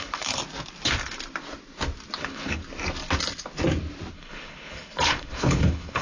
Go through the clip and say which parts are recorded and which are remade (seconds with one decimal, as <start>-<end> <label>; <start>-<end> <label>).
0.0-0.4 remade; 0.4-2.2 recorded; 2.2-2.6 remade; 2.6-4.1 recorded; 4.1-6.0 remade